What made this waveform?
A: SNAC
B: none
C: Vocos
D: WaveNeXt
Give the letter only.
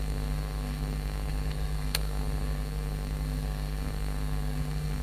A